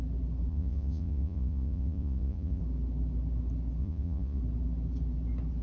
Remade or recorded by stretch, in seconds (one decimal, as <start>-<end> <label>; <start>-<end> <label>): 0.0-0.5 recorded; 0.5-2.6 remade; 2.6-3.8 recorded; 3.8-4.4 remade; 4.4-5.6 recorded